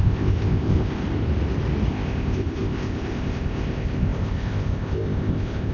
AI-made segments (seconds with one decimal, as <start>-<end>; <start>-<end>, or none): 0.0-1.0; 1.9-5.7